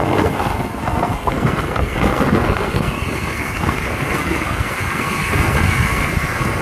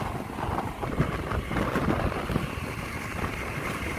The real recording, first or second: second